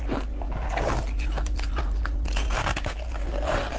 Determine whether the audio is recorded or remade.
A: recorded